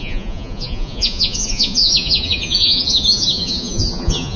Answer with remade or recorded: remade